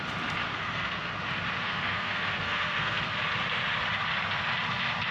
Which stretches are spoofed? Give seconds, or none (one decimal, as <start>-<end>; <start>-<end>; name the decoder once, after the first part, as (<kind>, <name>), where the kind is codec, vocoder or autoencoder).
0.5-1.1 (codec, SNAC); 1.6-3.2